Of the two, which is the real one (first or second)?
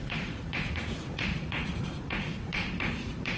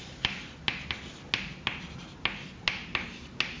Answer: second